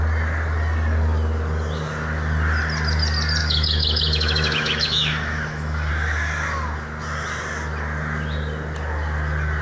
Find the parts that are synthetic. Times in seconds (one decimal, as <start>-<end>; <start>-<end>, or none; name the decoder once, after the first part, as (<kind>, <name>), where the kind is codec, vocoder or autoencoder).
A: 3.4-5.9 (autoencoder, DAC-VAE)